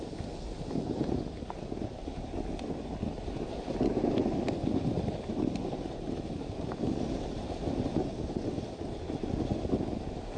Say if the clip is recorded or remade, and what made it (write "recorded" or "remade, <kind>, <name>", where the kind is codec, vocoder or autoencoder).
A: recorded